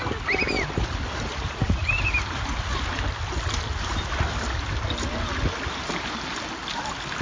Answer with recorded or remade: recorded